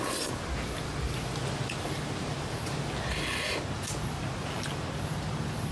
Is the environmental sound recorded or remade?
recorded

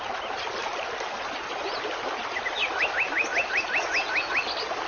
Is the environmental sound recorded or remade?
recorded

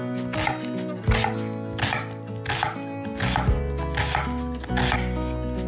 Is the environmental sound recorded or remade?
recorded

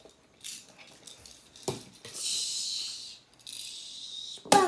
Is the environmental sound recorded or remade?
recorded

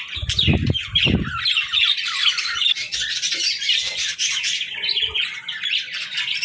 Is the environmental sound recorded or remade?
recorded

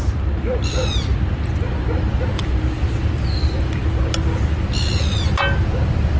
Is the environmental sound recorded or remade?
recorded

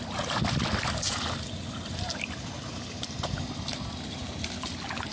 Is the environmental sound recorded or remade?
recorded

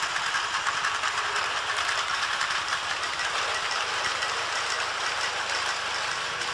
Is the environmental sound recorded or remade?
recorded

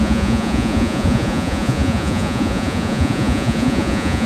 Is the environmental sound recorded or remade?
remade